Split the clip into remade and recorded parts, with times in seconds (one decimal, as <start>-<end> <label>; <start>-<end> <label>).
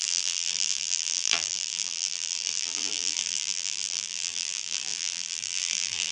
0.0-6.1 remade